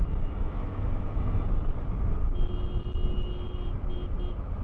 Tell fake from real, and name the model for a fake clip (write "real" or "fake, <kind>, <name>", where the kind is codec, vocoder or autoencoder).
real